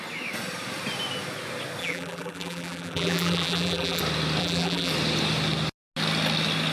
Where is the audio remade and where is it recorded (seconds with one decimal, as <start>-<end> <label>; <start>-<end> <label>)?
0.0-1.8 recorded; 1.8-4.0 remade; 4.0-4.4 recorded; 4.4-4.9 remade; 4.9-6.7 recorded

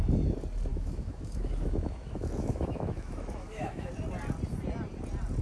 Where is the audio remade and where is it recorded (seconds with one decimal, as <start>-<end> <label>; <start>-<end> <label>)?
0.0-0.7 recorded; 0.7-3.9 remade; 3.9-5.4 recorded

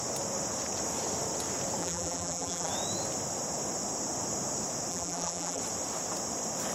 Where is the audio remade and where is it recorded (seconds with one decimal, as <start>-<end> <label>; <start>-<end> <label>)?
0.0-1.8 recorded; 1.8-2.7 remade; 2.7-4.9 recorded; 4.9-5.6 remade; 5.6-6.7 recorded

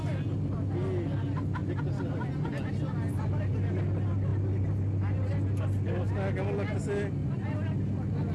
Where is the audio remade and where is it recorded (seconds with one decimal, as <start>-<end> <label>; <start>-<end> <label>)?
0.0-8.3 recorded